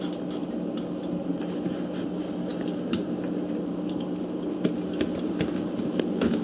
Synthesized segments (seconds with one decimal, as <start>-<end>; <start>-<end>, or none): 2.5-4.7